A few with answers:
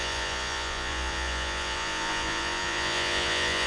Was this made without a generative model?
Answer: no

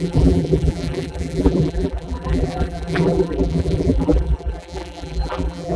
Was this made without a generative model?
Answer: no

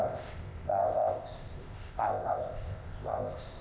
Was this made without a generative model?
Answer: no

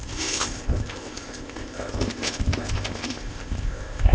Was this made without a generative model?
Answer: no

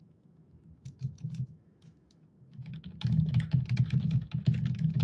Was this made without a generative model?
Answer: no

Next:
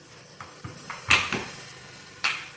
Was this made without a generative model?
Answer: yes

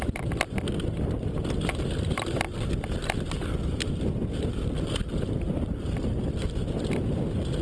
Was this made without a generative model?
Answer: yes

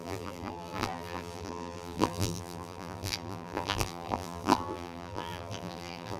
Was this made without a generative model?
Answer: no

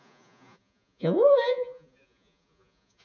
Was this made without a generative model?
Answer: no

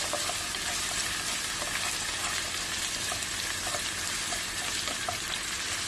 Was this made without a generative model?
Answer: yes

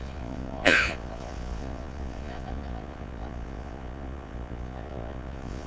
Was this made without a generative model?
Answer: no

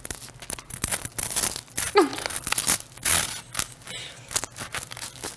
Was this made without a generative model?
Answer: yes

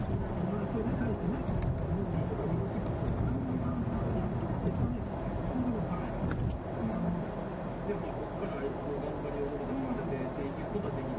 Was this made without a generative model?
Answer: yes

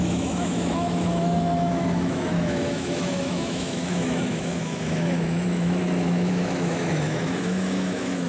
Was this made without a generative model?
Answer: no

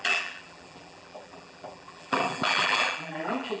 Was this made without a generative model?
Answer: no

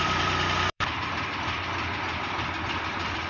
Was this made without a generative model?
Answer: no